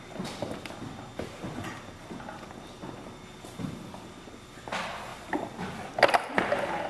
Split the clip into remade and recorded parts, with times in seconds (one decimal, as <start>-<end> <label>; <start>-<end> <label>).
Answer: 0.0-5.1 recorded; 5.1-5.9 remade; 5.9-6.9 recorded